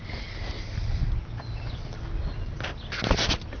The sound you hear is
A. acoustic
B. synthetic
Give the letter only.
A